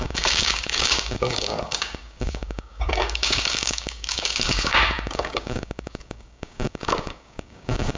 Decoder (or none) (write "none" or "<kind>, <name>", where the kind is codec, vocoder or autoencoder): codec, DAC